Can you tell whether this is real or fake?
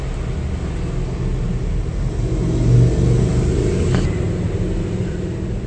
real